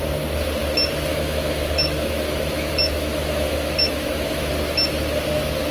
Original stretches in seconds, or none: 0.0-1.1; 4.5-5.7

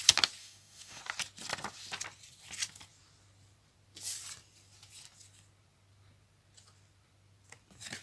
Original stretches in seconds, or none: 0.0-0.4; 1.0-8.0

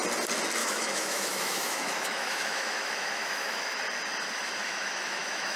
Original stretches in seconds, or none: 0.0-0.6; 3.8-4.6

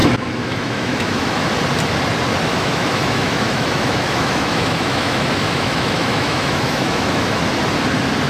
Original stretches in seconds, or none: 1.5-2.5; 7.4-8.3

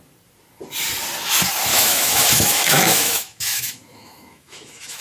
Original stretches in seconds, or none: 0.0-1.7

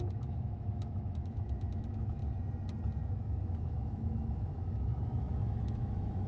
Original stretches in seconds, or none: 2.2-3.0